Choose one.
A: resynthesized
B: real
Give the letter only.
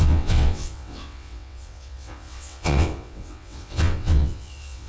A